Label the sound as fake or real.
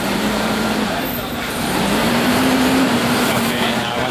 fake